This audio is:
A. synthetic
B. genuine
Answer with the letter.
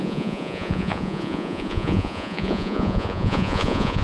A